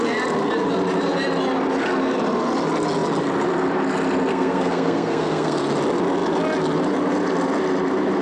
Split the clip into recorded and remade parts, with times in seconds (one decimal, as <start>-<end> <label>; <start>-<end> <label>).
0.0-4.3 recorded; 4.3-5.6 remade; 5.6-8.2 recorded